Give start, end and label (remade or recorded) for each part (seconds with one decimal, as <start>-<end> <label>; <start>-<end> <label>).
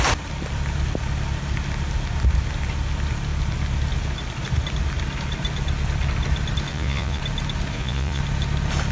0.0-6.7 recorded; 6.7-7.2 remade; 7.2-7.7 recorded; 7.7-8.2 remade; 8.2-8.9 recorded